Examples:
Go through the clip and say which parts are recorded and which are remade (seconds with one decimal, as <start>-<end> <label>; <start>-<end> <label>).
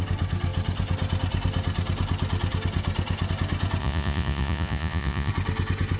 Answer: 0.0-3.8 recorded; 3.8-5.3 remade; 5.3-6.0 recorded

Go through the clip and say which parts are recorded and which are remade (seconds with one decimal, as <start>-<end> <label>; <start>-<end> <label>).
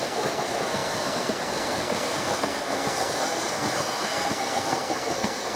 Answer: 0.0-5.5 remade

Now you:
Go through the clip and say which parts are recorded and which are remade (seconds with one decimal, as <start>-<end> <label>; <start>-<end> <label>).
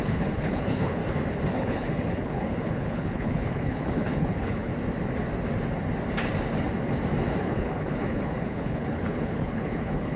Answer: 0.0-1.0 remade; 1.0-1.5 recorded; 1.5-4.7 remade; 4.7-7.4 recorded; 7.4-10.2 remade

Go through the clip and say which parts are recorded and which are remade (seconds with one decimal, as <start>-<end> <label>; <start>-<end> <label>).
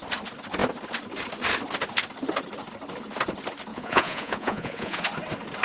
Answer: 0.0-3.7 recorded; 3.7-5.0 remade; 5.0-5.6 recorded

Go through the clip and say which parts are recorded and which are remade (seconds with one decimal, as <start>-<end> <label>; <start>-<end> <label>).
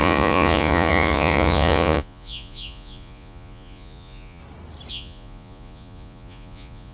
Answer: 0.0-4.4 remade; 4.4-4.9 recorded; 4.9-6.9 remade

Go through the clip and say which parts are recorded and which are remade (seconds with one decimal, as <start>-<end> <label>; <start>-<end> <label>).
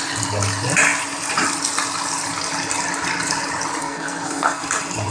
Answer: 0.0-3.8 recorded; 3.8-4.6 remade; 4.6-5.1 recorded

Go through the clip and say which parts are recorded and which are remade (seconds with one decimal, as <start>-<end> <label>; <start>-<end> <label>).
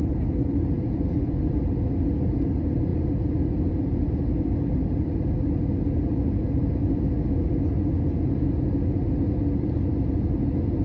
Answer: 0.0-10.8 recorded